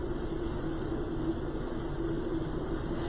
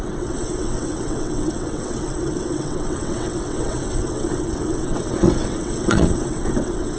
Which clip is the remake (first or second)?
second